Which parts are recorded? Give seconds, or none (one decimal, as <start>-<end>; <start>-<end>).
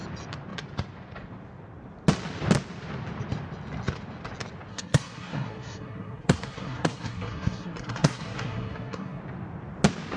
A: 0.0-4.7; 9.2-10.2